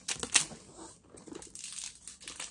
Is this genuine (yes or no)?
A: yes